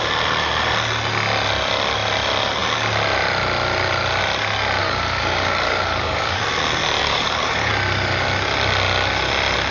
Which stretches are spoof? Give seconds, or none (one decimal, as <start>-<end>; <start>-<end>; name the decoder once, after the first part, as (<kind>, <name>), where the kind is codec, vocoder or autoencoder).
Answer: 4.8-6.4 (codec, DAC); 7.0-7.7